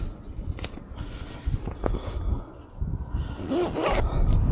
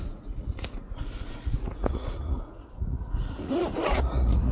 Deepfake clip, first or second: second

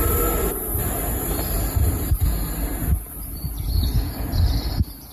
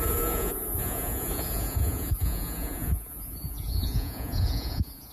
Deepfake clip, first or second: second